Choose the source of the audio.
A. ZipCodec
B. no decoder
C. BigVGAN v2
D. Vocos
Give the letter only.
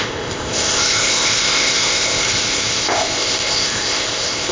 A